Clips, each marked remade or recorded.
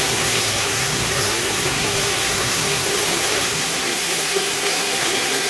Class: remade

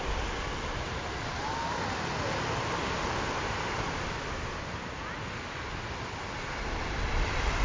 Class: recorded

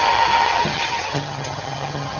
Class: remade